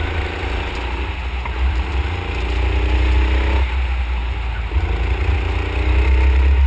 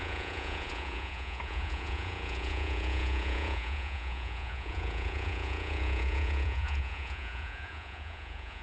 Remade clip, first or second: second